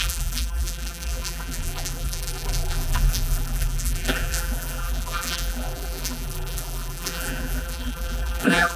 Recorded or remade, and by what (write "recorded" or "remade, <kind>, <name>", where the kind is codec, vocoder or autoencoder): remade, vocoder, BigVGAN v2